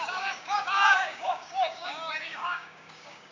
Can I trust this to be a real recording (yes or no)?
no